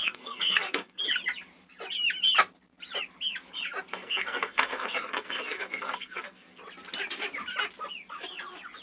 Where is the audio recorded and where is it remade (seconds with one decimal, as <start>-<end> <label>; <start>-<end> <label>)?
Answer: 0.0-1.0 remade; 1.0-3.9 recorded; 3.9-6.6 remade; 6.6-8.8 recorded